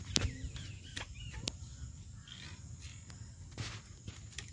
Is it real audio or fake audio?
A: real